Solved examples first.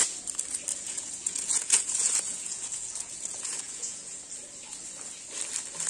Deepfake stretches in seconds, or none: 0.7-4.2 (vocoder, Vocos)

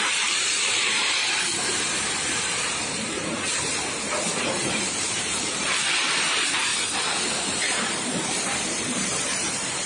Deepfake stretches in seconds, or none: 0.0-6.7 (vocoder, BigVGAN v2); 7.2-9.9

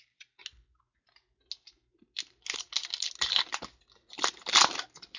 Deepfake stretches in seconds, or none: none

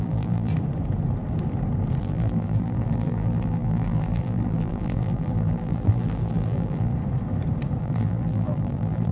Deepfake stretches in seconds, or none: 0.0-0.5 (vocoder, BigVGAN v2); 2.0-6.9; 7.8-9.1

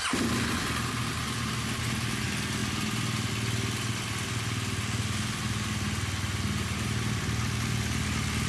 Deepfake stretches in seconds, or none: none

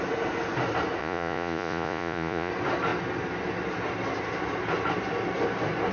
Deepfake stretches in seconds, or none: 1.0-2.5 (vocoder, Vocos)